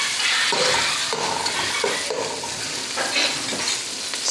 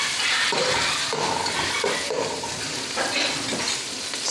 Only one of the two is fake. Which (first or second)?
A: second